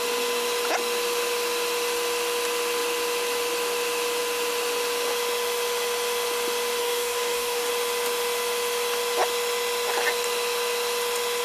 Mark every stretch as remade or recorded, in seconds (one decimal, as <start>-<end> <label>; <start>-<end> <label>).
0.0-6.8 recorded; 6.8-7.7 remade; 7.7-11.4 recorded